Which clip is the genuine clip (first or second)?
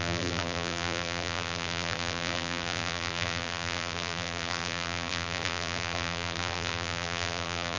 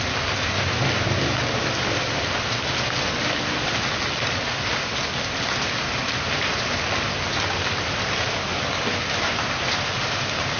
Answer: second